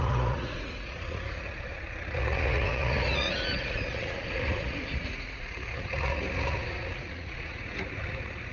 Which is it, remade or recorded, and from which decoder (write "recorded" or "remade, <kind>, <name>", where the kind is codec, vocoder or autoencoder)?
remade, vocoder, Vocos